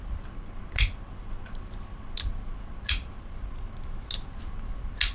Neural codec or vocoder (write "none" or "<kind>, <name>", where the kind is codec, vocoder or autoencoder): none